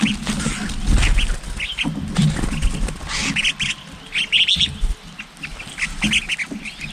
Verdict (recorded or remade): recorded